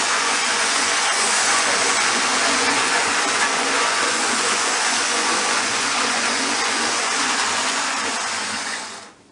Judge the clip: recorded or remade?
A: remade